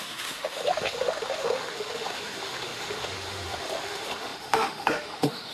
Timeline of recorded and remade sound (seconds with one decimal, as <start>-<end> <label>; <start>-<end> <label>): 0.0-5.5 remade